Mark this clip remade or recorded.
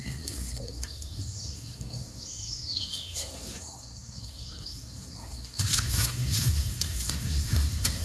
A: remade